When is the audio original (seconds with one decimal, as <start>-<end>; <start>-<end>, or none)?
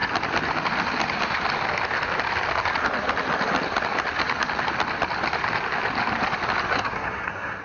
0.0-6.7